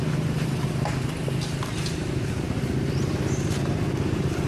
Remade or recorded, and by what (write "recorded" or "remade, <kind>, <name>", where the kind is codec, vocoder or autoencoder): recorded